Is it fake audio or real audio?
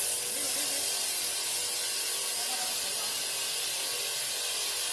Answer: real